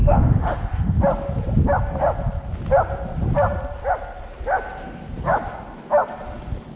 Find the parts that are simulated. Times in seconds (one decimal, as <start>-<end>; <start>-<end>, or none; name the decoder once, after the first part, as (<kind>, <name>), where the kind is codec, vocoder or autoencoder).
0.0-1.0 (autoencoder, DAC-VAE)